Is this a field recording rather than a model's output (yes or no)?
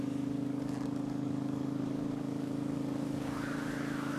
no